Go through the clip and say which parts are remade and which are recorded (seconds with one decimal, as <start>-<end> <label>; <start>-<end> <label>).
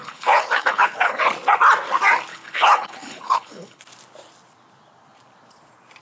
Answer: 0.0-1.2 remade; 1.2-2.3 recorded; 2.3-3.8 remade; 3.8-6.0 recorded